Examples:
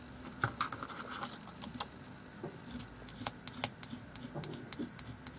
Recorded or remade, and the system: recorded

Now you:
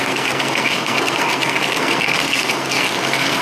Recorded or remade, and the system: remade, codec, SNAC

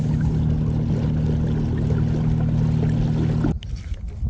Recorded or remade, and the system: recorded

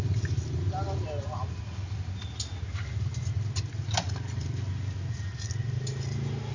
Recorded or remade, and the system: recorded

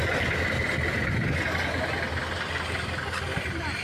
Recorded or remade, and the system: recorded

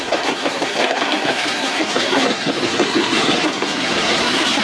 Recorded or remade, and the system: remade, codec, SNAC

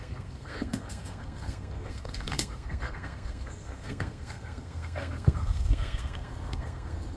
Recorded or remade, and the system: remade, codec, SNAC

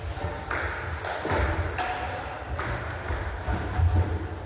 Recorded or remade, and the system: recorded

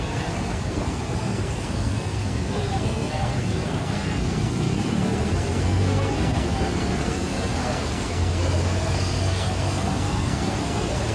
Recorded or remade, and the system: remade, codec, SNAC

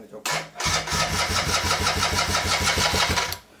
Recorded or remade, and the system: recorded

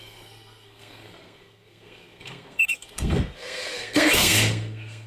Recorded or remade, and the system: remade, codec, SNAC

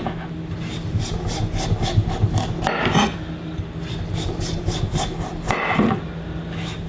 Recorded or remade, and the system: recorded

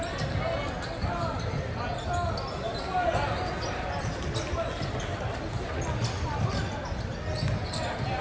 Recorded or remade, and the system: recorded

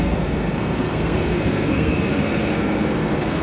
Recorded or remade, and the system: remade, codec, SNAC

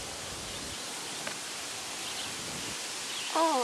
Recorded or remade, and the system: recorded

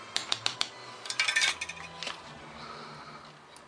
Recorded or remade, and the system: recorded